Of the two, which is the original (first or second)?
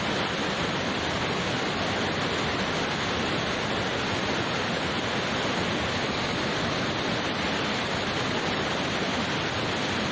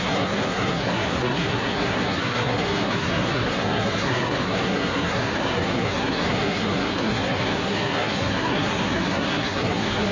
first